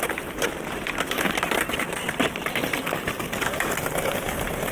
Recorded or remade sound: recorded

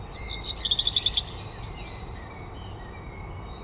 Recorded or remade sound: recorded